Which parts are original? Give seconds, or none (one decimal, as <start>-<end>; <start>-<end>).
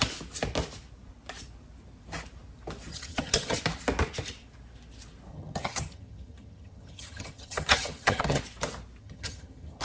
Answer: 0.0-2.9; 3.6-5.3; 8.4-9.0